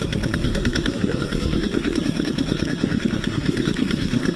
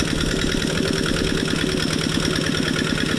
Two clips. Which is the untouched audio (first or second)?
second